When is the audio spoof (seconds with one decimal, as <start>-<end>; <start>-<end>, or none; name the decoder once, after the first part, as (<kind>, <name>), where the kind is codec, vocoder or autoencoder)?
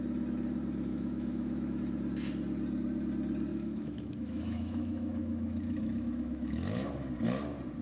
0.9-1.8 (autoencoder, DAC-VAE); 3.5-6.9